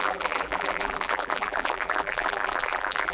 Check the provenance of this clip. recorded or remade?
remade